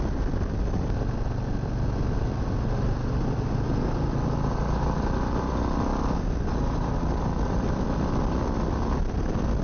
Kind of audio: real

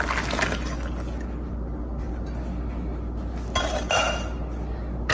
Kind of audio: real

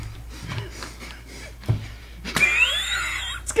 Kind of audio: real